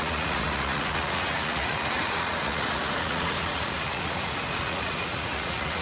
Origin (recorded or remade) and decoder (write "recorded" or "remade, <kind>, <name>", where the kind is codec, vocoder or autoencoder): remade, vocoder, Vocos